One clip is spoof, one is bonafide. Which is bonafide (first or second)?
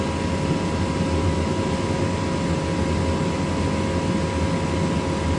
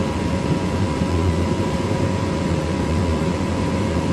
first